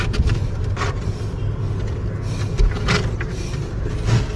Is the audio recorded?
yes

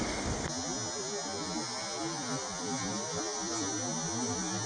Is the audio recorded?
yes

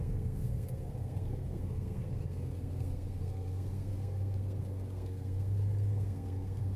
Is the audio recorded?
no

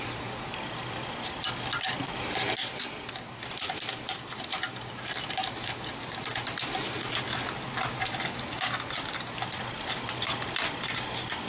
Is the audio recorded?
yes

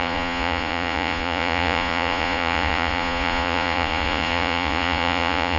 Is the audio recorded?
no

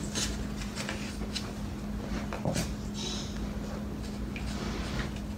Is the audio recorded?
yes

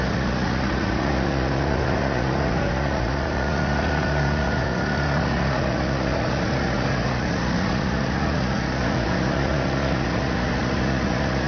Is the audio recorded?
no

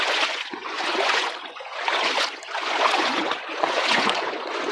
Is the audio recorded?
no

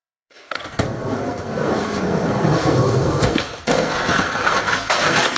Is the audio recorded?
no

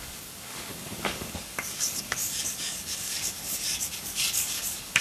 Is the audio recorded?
no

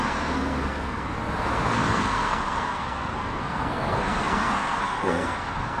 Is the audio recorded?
no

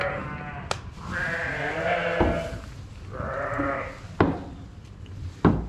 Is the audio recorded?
yes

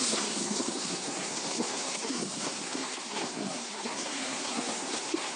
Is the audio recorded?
no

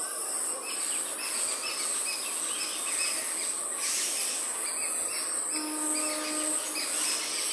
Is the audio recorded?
yes